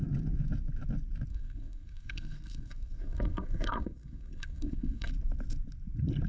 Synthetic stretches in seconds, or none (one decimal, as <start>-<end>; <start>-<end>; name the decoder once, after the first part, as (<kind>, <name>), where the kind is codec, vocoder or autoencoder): 1.3-5.1 (codec, SNAC)